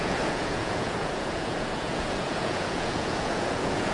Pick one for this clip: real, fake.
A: fake